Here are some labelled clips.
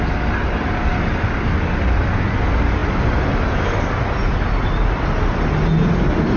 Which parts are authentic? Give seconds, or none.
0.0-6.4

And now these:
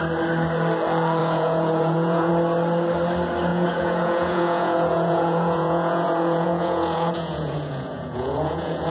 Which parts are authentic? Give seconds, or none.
0.0-1.2; 2.3-3.5

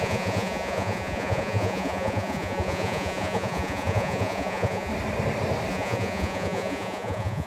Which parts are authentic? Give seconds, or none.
4.9-5.7